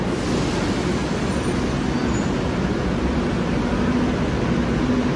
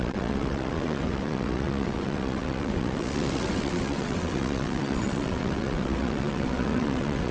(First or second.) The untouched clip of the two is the first